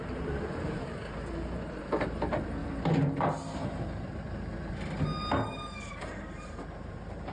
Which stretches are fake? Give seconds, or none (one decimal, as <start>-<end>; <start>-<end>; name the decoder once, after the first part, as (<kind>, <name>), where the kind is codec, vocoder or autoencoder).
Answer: 0.0-2.6 (vocoder, BigVGAN v2); 5.9-7.3